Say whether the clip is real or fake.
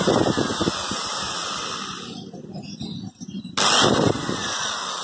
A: real